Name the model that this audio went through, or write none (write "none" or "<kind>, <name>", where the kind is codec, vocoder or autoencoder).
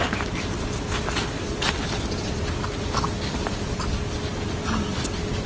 none